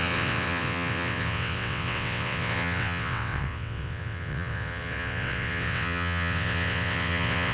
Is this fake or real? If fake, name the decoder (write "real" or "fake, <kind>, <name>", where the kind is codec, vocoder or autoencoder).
fake, vocoder, WaveNeXt